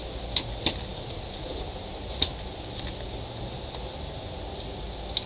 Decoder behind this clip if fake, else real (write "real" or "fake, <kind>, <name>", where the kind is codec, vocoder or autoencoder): real